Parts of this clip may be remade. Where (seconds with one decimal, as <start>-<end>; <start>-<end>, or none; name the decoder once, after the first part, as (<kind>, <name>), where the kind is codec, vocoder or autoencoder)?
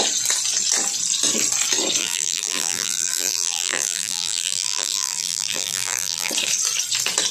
2.0-6.3 (vocoder, BigVGAN v2)